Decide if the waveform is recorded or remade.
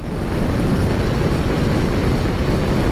recorded